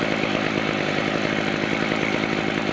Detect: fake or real real